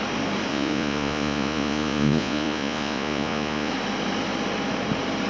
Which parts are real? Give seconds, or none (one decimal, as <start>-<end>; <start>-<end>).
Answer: 0.0-0.5; 3.7-5.3